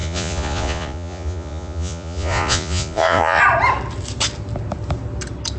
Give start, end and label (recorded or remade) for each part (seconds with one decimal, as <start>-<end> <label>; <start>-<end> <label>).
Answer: 0.0-3.4 remade; 3.4-5.6 recorded